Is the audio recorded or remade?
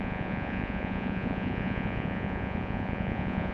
remade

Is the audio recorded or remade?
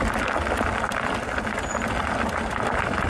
recorded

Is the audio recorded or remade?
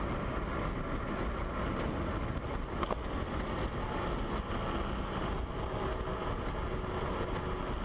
recorded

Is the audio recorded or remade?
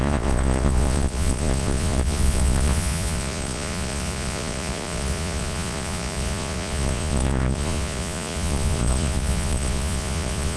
remade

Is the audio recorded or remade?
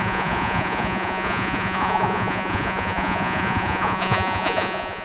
remade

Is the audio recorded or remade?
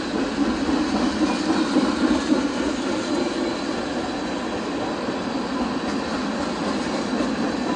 recorded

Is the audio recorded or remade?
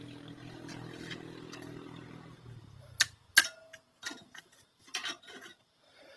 recorded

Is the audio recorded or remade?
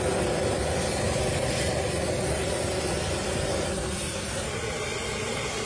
recorded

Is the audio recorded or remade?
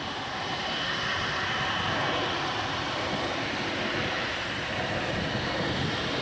recorded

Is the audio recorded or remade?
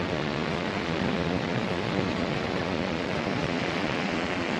remade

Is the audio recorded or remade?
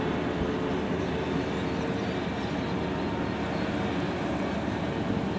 recorded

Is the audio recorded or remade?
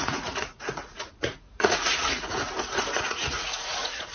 remade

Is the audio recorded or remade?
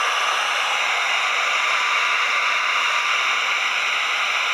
recorded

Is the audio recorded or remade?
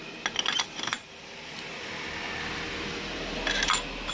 recorded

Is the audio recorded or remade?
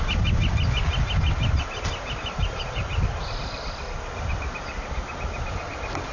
recorded